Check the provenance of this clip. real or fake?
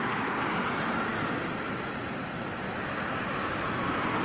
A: real